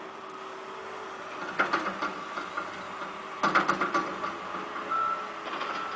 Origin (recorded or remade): recorded